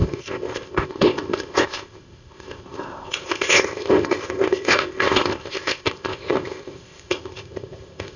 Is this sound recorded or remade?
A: remade